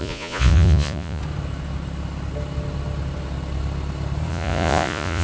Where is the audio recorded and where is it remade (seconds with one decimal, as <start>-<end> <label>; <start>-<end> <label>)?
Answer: 0.0-1.2 remade; 1.2-4.3 recorded; 4.3-5.2 remade